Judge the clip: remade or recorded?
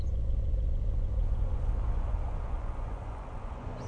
remade